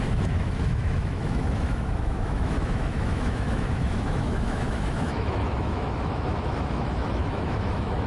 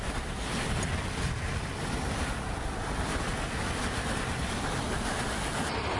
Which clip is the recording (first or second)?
second